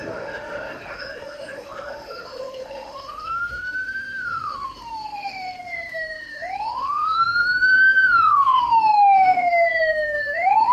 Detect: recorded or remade remade